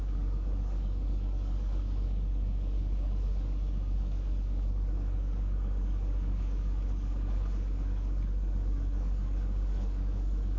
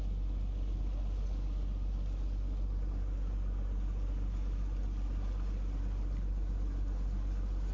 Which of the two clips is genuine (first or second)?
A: second